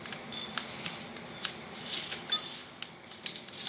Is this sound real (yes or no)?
yes